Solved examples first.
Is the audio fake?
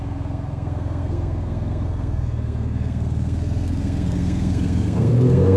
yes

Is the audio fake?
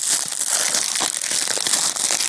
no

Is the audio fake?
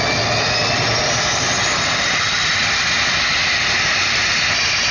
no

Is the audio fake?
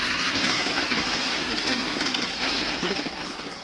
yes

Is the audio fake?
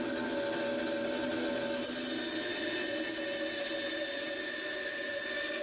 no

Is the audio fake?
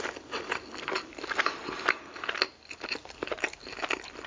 no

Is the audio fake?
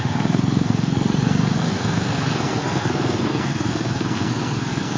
yes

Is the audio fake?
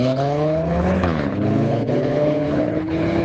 yes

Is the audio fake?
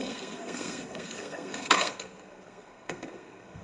yes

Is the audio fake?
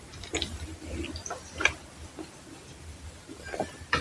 no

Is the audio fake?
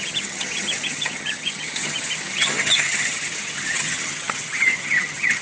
yes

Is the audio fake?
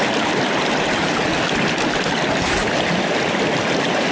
no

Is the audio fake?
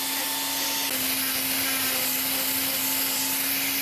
no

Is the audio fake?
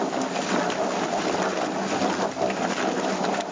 no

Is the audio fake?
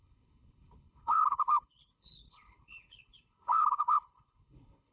yes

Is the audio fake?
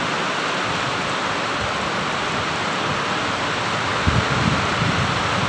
no